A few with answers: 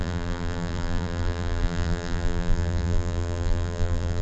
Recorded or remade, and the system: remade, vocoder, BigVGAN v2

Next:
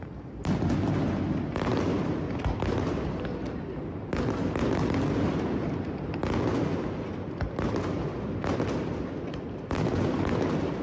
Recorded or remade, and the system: recorded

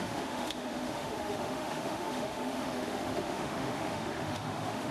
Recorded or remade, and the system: remade, autoencoder, DAC-VAE